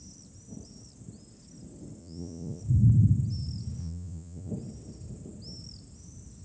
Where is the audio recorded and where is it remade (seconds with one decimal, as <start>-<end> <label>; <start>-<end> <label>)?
0.0-2.0 recorded; 2.0-2.6 remade; 2.6-3.8 recorded; 3.8-4.5 remade; 4.5-6.4 recorded